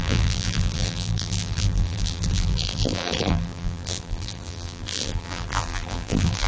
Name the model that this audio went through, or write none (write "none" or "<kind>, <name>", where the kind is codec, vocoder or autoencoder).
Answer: vocoder, BigVGAN v2